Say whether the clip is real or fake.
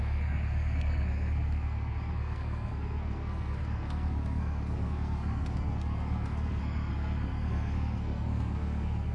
fake